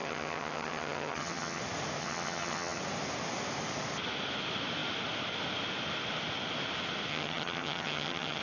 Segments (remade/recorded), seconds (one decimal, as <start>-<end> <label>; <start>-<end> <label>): 0.0-1.6 remade; 1.6-2.0 recorded; 2.0-2.8 remade; 2.8-7.1 recorded; 7.1-8.4 remade